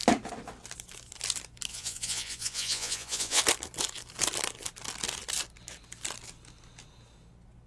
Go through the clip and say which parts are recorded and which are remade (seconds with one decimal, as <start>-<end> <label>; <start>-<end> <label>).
0.0-1.7 recorded; 1.7-3.4 remade; 3.4-7.7 recorded